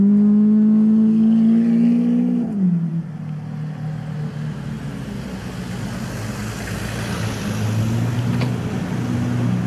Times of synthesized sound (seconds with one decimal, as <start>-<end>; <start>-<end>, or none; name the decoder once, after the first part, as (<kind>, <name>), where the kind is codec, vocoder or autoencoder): none